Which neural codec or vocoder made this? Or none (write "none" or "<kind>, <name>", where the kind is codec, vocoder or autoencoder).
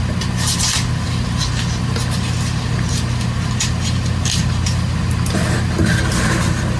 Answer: none